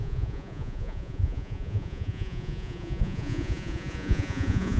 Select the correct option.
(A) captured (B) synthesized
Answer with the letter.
B